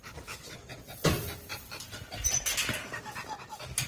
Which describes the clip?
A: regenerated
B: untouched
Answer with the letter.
B